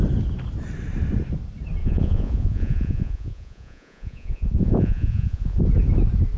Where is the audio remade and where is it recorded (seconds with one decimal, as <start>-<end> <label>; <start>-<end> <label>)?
0.0-1.8 recorded; 1.8-5.6 remade; 5.6-6.4 recorded